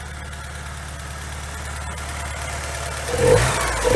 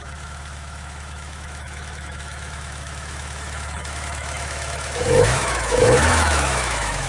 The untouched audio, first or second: first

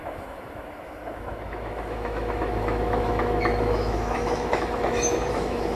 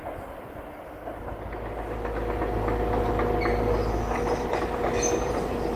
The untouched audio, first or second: second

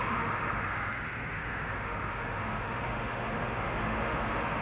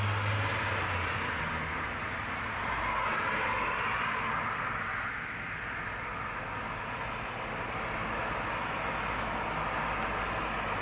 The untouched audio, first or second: second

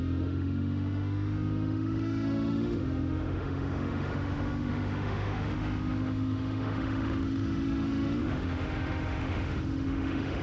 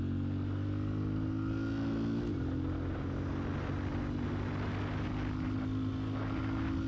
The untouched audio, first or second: second